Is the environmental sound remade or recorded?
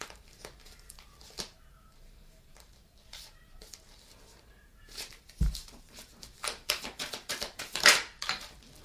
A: remade